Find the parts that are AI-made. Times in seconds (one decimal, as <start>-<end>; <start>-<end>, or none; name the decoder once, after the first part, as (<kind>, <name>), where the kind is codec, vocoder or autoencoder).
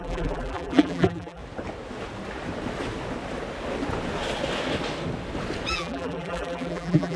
0.0-1.4 (vocoder, BigVGAN v2); 5.7-7.2